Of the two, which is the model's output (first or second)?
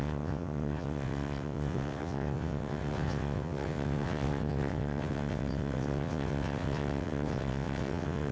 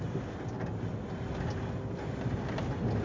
first